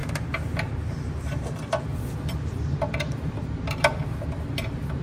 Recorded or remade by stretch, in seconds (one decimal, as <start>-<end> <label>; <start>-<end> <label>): 0.0-1.9 recorded; 1.9-3.4 remade; 3.4-5.0 recorded